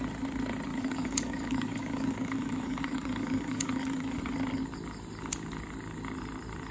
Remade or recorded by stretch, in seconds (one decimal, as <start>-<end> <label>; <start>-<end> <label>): 0.0-0.7 recorded; 0.7-4.2 remade; 4.2-6.7 recorded